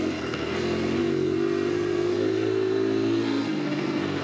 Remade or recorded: remade